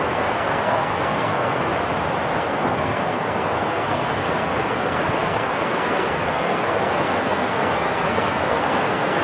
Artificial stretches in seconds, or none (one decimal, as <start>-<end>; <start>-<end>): 0.0-1.7; 2.3-9.2